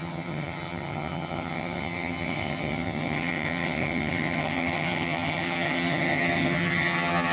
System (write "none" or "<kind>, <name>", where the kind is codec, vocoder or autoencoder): vocoder, HiFi-GAN